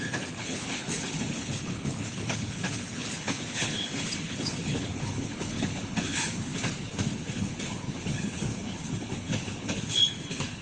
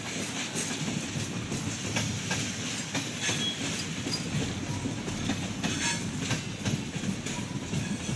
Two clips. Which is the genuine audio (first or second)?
second